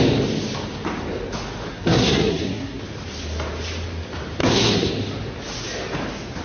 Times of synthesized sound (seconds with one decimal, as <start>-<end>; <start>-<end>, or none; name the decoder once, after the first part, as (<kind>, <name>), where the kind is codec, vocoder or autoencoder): 1.7-2.8 (codec, SNAC); 4.4-4.9